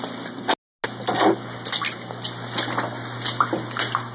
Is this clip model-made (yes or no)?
no